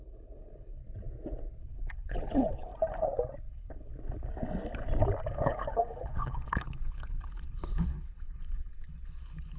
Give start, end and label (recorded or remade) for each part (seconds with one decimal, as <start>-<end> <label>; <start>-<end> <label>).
0.0-0.8 remade; 0.8-1.6 recorded; 1.6-2.7 remade; 2.7-3.5 recorded; 3.5-3.9 remade; 3.9-5.3 recorded; 5.3-9.6 remade